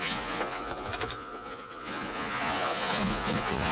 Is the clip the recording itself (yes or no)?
no